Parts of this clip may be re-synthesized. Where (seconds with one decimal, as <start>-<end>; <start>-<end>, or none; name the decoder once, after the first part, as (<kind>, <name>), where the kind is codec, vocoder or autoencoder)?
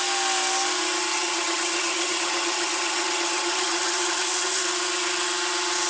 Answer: 1.1-4.6 (vocoder, HiFi-GAN)